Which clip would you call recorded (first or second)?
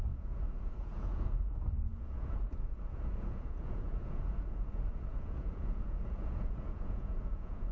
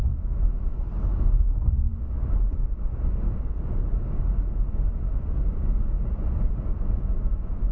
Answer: second